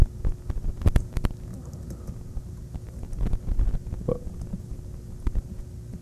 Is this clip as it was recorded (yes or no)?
yes